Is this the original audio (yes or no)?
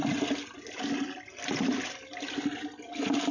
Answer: yes